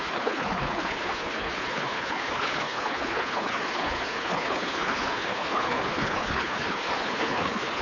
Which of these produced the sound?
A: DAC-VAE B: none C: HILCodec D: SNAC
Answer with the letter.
C